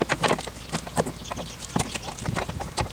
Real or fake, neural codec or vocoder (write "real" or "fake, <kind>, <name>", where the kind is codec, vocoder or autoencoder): real